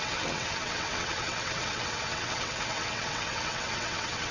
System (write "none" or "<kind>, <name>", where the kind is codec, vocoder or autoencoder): vocoder, WaveNeXt